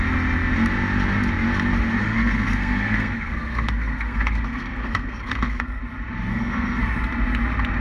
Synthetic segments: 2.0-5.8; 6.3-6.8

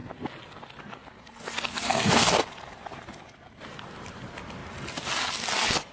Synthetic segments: 1.7-2.5